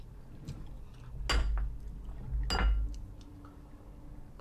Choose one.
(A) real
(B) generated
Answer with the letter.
A